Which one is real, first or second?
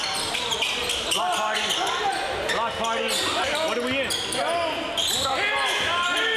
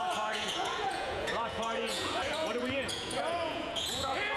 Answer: first